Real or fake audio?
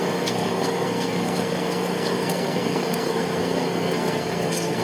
fake